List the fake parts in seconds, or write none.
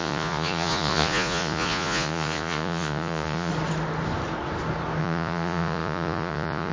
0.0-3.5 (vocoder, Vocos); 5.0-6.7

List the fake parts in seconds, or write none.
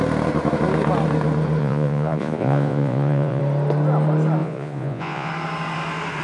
1.6-3.4 (vocoder, Vocos); 4.4-5.3